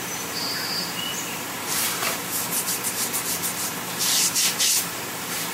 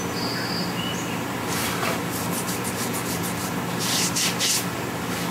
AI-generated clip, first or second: first